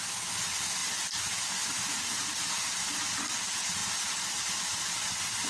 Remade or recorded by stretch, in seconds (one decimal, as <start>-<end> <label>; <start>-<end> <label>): 0.0-5.5 recorded